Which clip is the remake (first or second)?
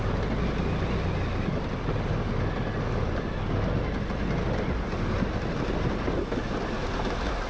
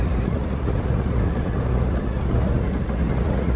second